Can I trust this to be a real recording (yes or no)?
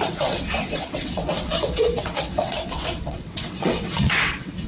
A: no